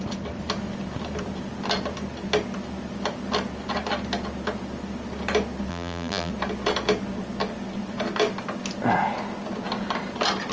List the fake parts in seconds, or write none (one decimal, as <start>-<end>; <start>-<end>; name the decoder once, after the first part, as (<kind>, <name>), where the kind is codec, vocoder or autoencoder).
5.7-6.3 (vocoder, BigVGAN v2)